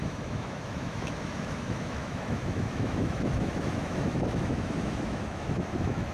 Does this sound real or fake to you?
fake